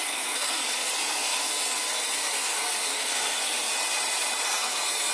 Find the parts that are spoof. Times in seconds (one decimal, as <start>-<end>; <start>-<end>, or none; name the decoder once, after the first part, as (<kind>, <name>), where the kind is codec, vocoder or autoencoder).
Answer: 0.0-3.7 (codec, SNAC); 4.6-5.1